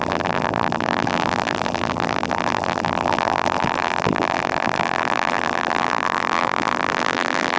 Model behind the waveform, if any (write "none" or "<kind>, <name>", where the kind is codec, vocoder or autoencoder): vocoder, BigVGAN v2